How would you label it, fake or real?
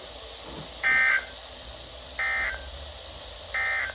real